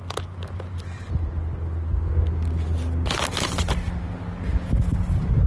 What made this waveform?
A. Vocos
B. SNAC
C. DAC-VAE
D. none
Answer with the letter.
D